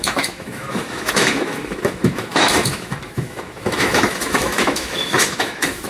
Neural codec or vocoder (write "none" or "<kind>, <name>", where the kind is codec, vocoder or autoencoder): autoencoder, DAC-VAE